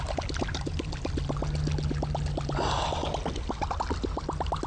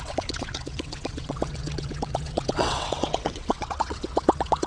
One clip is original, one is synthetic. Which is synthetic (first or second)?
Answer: second